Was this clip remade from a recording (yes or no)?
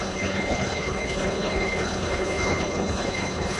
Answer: yes